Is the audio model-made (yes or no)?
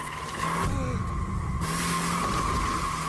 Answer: no